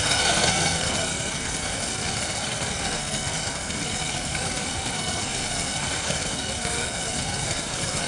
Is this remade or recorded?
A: remade